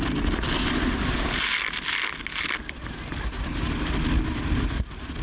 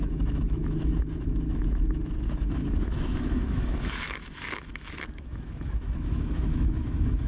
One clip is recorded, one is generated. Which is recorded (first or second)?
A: first